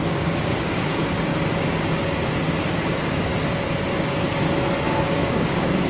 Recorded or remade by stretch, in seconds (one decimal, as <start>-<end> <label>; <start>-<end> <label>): 0.0-1.3 remade; 1.3-2.6 recorded; 2.6-3.3 remade; 3.3-4.8 recorded; 4.8-5.9 remade